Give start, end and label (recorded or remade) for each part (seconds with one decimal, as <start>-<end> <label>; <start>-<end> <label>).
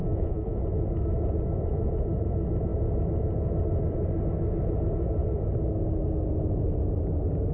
0.0-0.6 remade; 0.6-7.5 recorded